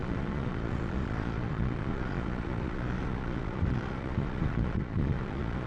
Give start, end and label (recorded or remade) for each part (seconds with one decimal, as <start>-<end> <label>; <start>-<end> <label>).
0.0-5.7 remade